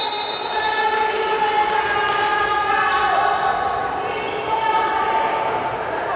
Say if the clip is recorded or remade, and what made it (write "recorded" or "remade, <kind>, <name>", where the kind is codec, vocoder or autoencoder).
recorded